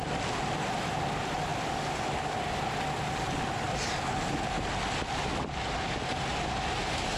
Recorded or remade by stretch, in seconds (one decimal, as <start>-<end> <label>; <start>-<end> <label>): 0.0-7.2 recorded